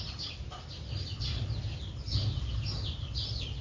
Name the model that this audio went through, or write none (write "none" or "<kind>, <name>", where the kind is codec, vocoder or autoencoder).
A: vocoder, BigVGAN v2